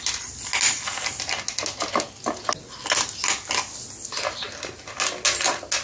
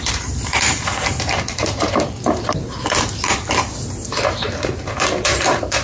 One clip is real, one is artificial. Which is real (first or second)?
first